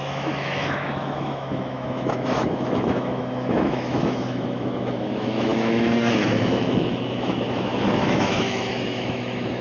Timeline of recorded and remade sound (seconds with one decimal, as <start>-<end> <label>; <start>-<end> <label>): 0.0-9.6 remade